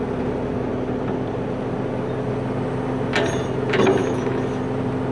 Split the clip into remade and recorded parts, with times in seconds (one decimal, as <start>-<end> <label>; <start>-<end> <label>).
0.0-4.0 recorded; 4.0-4.6 remade; 4.6-5.1 recorded

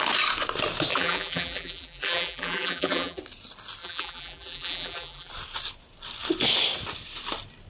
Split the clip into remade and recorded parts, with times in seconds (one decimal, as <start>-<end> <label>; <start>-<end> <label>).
0.0-0.9 recorded; 0.9-3.2 remade; 3.2-3.8 recorded; 3.8-5.3 remade; 5.3-7.7 recorded

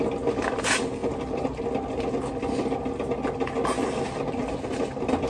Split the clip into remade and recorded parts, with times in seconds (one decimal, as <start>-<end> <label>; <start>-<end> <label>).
0.0-5.3 recorded

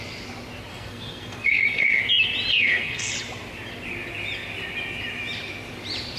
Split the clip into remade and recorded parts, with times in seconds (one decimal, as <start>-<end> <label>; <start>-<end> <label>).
0.0-0.7 recorded; 0.7-2.0 remade; 2.0-2.5 recorded; 2.5-3.1 remade; 3.1-6.2 recorded

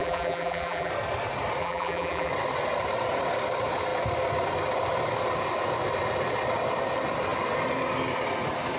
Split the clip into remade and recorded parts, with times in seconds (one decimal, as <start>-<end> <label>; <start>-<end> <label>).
0.0-0.9 remade; 0.9-1.6 recorded; 1.6-2.3 remade; 2.3-8.8 recorded

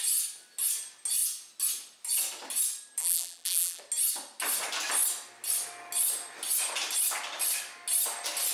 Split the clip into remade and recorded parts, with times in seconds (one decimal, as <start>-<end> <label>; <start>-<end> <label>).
0.0-3.0 recorded; 3.0-3.8 remade; 3.8-8.5 recorded

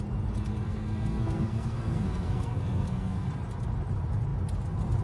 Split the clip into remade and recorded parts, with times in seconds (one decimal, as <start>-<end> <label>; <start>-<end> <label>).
0.0-0.5 recorded; 0.5-3.3 remade; 3.3-5.0 recorded

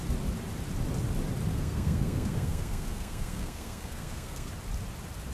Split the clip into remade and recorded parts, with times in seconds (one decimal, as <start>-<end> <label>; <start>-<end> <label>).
0.0-1.5 recorded; 1.5-4.5 remade; 4.5-5.3 recorded